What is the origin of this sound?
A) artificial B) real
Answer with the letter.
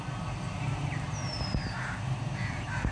A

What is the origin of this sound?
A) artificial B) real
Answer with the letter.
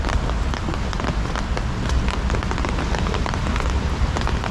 B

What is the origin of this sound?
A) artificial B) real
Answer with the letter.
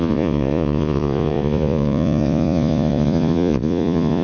A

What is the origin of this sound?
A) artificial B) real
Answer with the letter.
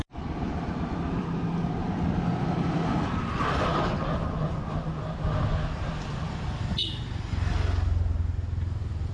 B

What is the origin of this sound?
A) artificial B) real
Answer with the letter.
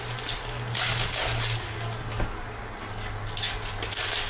B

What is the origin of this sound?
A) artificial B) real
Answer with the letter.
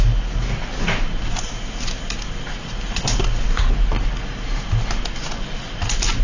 B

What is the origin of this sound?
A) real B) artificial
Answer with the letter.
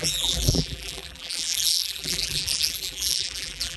B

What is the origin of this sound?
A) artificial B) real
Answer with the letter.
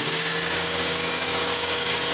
A